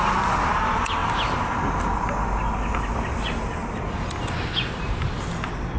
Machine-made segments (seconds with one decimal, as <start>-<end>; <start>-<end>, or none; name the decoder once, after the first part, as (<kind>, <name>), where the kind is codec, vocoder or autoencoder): none